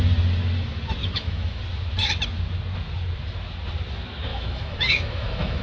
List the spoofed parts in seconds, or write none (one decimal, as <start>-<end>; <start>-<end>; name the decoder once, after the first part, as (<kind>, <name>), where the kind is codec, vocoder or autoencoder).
1.0-1.6 (autoencoder, DAC-VAE); 4.3-5.6